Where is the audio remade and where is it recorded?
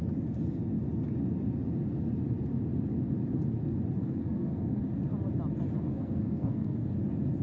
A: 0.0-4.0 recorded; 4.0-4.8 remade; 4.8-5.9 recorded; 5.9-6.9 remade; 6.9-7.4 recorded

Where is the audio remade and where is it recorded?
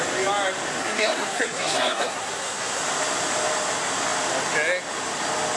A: 0.0-0.8 recorded; 0.8-2.8 remade; 2.8-5.6 recorded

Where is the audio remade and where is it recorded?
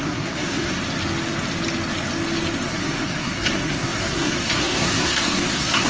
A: 0.0-0.8 remade; 0.8-2.7 recorded; 2.7-5.9 remade